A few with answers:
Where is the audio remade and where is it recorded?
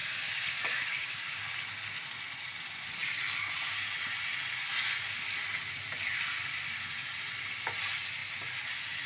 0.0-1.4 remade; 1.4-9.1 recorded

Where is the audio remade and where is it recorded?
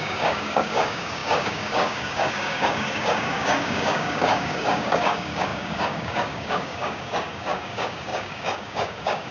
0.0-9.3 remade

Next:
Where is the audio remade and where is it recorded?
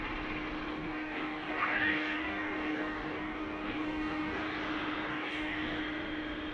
0.0-0.7 recorded; 0.7-4.6 remade; 4.6-5.1 recorded; 5.1-5.8 remade; 5.8-6.5 recorded